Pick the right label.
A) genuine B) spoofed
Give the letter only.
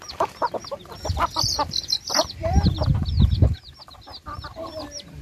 B